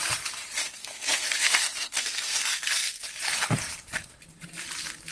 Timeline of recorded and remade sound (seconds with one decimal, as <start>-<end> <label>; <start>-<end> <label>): 0.0-0.7 recorded; 0.7-3.1 remade; 3.1-5.1 recorded